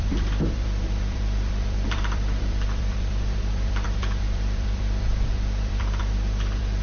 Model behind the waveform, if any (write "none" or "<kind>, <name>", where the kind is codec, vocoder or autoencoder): vocoder, BigVGAN v2